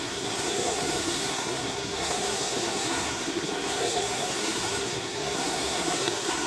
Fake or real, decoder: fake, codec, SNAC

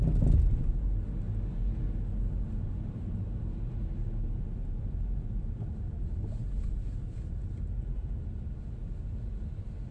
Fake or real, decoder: real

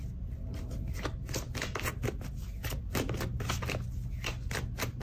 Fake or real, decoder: real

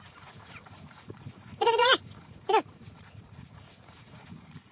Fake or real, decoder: fake, vocoder, Vocos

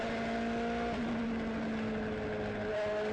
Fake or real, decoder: real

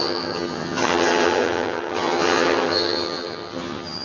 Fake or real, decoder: fake, vocoder, HiFi-GAN